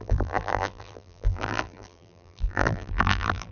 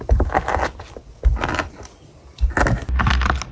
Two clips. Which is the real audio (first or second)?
second